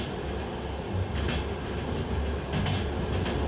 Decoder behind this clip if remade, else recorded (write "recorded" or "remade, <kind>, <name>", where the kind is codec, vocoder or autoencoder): recorded